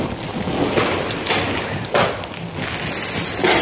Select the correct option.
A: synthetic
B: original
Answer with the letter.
B